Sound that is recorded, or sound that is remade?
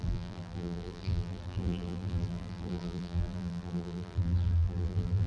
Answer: remade